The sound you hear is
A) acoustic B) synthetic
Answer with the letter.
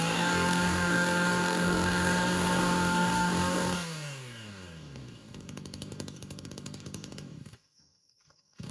B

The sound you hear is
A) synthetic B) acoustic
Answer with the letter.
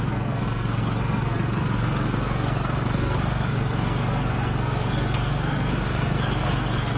A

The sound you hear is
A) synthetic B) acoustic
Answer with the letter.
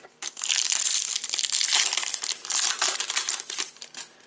B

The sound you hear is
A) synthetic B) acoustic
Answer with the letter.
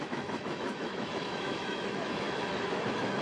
A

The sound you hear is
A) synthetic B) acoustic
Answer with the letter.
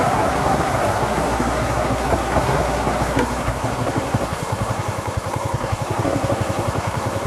A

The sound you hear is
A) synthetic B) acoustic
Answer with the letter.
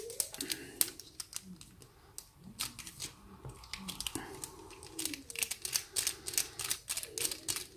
B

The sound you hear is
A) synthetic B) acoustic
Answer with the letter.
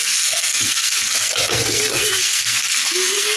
A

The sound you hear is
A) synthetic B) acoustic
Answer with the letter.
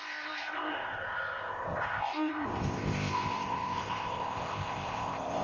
A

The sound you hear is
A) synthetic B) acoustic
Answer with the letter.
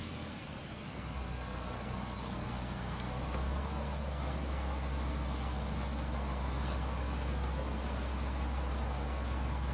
A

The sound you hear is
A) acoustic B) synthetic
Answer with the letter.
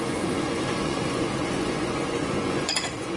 B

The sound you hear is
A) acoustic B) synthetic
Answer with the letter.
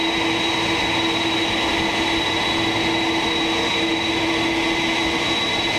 A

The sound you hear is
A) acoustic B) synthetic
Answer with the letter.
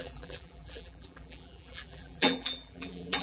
B